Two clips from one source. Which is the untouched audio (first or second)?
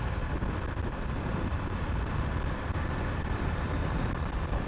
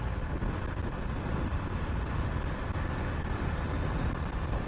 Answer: second